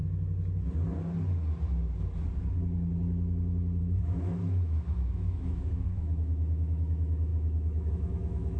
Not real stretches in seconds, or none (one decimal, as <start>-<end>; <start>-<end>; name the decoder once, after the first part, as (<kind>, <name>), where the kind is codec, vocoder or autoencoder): 3.8-8.6 (autoencoder, DAC-VAE)